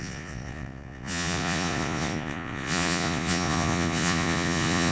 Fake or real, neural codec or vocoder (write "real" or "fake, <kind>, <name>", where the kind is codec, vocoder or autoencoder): fake, vocoder, Vocos